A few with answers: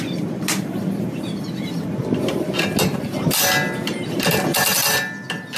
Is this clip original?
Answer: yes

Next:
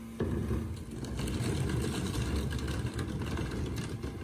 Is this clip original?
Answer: yes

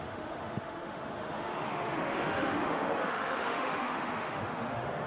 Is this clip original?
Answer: no